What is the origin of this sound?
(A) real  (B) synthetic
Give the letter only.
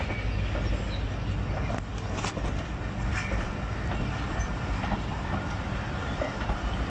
A